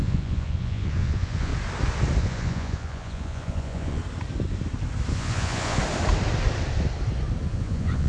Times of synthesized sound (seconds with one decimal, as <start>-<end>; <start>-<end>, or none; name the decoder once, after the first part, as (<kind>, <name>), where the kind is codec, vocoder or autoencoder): 0.0-1.5 (vocoder, Vocos); 2.2-4.0; 5.1-5.8; 7.5-8.1